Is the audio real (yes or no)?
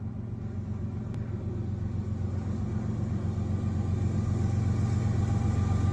yes